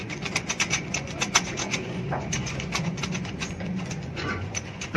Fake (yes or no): yes